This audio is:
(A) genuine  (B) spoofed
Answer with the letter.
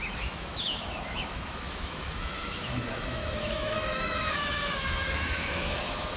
B